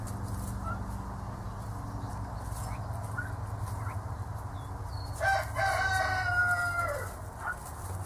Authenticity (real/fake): real